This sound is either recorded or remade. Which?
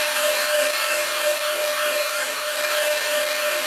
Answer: remade